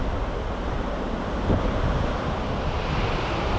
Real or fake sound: real